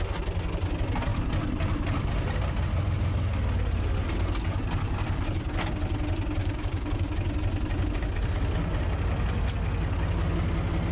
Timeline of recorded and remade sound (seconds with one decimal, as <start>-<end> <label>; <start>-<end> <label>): 0.0-6.4 recorded; 6.4-7.1 remade; 7.1-10.9 recorded